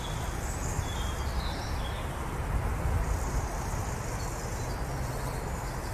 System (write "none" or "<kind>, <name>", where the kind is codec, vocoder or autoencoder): none